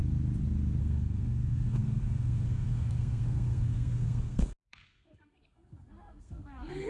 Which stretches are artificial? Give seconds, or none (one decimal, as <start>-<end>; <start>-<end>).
0.8-6.9

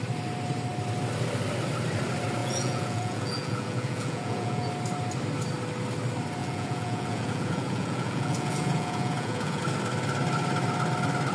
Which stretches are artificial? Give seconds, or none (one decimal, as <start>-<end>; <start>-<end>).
2.4-4.7; 6.4-9.6

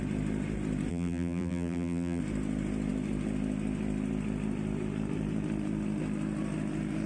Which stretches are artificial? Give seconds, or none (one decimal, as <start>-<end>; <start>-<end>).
0.9-2.2

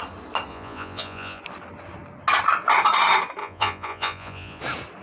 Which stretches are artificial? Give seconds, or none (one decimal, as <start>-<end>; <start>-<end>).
0.5-1.4; 3.4-4.6

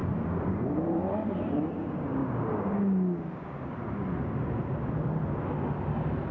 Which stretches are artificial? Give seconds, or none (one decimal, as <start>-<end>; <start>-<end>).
0.0-2.2

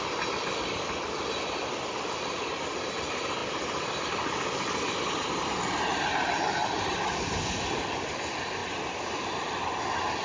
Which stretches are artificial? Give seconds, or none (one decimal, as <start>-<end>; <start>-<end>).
none

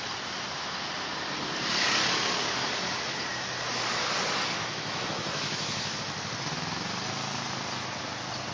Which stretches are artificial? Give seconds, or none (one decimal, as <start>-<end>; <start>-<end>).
4.6-6.0

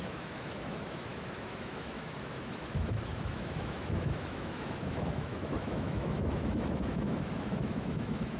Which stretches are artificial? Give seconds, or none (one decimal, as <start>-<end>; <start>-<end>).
0.0-8.4